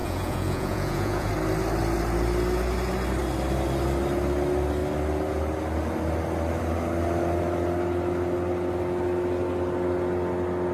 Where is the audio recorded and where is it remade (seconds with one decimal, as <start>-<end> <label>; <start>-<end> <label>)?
0.0-1.3 remade; 1.3-10.7 recorded